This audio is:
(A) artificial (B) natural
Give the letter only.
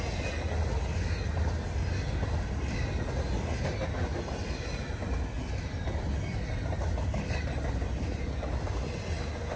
B